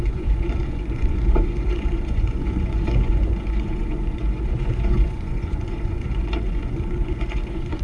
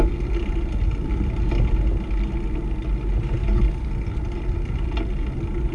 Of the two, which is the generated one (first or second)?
first